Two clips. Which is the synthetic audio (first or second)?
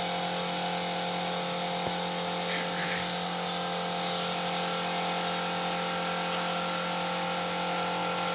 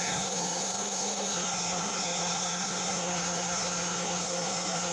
second